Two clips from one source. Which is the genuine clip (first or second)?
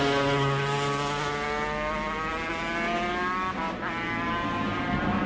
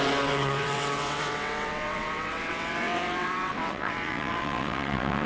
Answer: first